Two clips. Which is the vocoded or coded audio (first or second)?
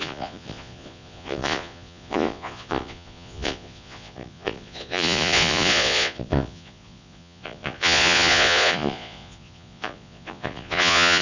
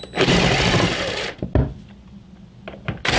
first